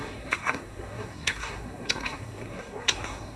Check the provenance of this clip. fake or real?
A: fake